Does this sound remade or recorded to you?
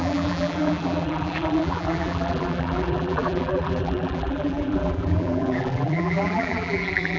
remade